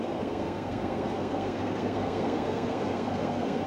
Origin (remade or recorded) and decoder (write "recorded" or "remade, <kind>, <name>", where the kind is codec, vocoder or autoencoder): remade, codec, SNAC